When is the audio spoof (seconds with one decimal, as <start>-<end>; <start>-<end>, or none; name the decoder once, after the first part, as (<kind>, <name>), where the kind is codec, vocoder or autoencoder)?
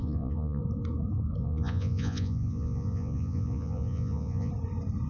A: 0.0-0.6 (vocoder, Vocos); 1.4-4.5